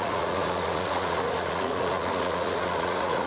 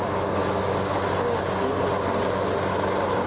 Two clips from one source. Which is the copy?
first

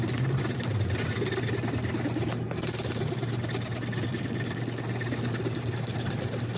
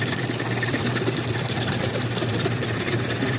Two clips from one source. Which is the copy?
second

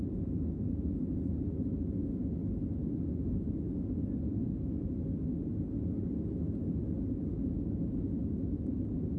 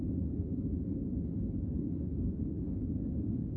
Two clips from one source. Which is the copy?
second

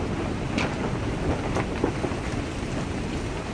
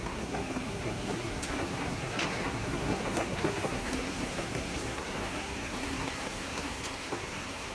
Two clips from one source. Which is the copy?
second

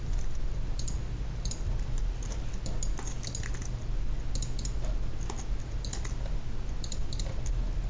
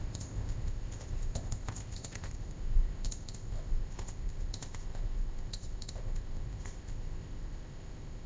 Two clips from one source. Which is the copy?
second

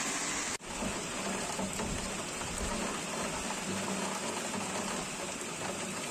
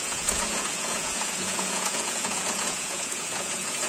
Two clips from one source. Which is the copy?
second